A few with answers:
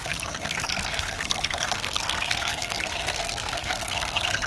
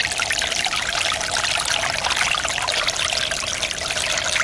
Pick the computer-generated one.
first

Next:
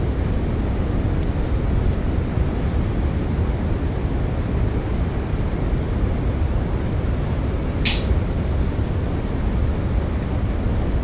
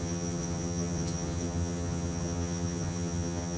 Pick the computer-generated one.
second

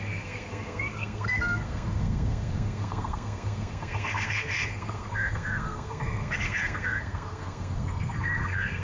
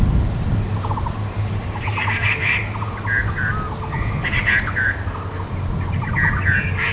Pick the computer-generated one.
first